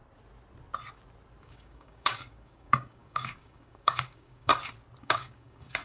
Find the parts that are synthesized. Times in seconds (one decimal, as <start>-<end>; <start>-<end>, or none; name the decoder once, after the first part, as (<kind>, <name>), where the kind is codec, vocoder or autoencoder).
1.4-4.5 (codec, DAC); 5.0-5.8